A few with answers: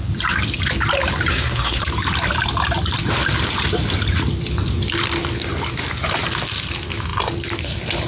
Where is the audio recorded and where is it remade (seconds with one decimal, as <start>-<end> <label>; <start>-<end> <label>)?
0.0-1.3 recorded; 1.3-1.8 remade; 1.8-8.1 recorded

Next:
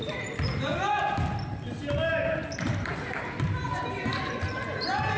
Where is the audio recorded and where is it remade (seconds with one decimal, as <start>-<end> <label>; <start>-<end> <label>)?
0.0-5.2 recorded

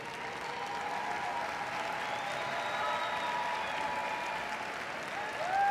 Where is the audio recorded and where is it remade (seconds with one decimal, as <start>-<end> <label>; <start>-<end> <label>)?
0.0-5.7 recorded

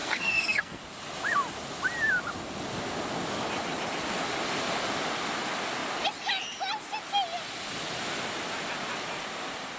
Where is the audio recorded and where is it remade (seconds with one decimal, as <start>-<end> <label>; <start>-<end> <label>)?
0.0-0.8 remade; 0.8-9.8 recorded